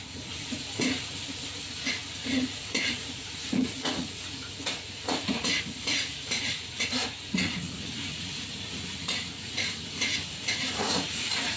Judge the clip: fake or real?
fake